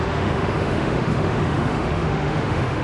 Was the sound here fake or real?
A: fake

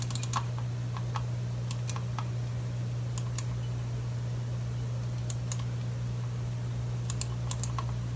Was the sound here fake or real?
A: real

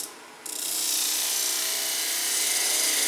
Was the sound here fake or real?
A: real